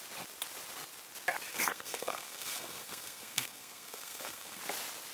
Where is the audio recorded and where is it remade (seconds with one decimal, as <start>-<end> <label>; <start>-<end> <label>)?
0.0-1.5 recorded; 1.5-4.6 remade; 4.6-5.1 recorded

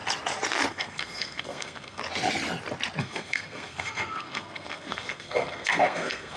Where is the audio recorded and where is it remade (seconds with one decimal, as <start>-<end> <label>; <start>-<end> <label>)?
0.0-0.7 recorded; 0.7-2.0 remade; 2.0-3.0 recorded; 3.0-6.4 remade